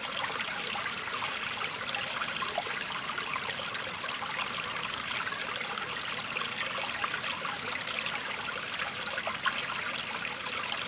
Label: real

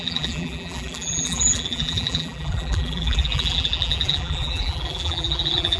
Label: fake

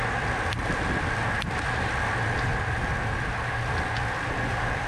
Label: real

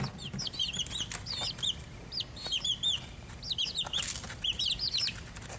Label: real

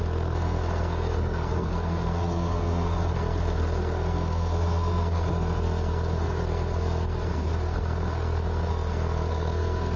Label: fake